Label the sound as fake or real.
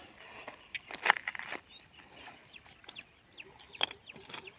real